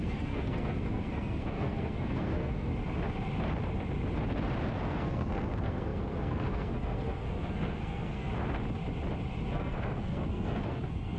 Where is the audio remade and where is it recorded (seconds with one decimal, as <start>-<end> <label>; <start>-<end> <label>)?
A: 0.0-2.7 remade; 2.7-4.8 recorded; 4.8-8.3 remade; 8.3-9.5 recorded; 9.5-11.2 remade